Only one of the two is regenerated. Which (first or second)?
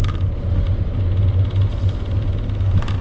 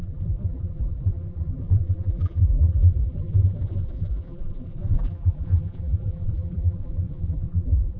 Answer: second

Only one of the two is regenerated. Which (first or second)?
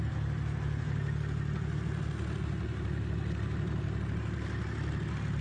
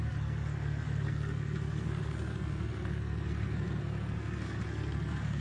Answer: second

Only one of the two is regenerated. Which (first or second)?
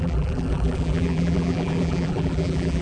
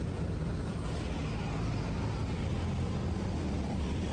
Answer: first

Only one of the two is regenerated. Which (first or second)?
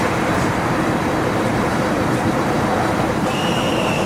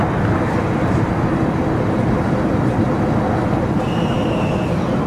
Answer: first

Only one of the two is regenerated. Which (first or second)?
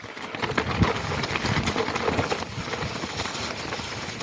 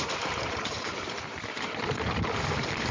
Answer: second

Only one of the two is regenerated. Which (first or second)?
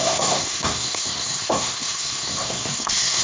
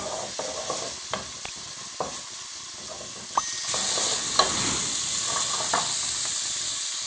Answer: first